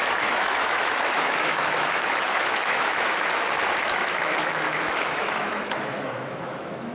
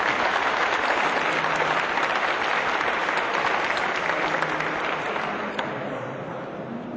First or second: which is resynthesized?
first